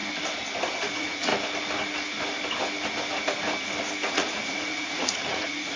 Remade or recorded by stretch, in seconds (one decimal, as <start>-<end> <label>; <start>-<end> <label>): 0.0-0.8 recorded; 0.8-1.3 remade; 1.3-4.1 recorded; 4.1-5.8 remade